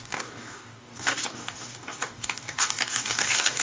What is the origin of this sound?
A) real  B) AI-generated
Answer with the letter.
B